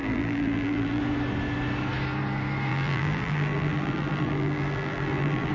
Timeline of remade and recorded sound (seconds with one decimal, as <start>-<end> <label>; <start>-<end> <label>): 0.0-1.0 remade; 1.0-2.7 recorded; 2.7-5.5 remade